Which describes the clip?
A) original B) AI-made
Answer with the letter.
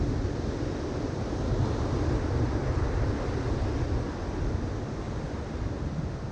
A